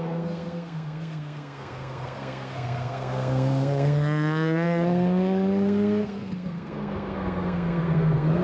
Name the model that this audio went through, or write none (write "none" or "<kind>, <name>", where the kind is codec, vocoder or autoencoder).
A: codec, SNAC